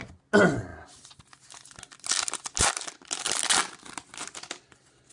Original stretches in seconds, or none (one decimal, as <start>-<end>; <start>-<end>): 0.0-5.1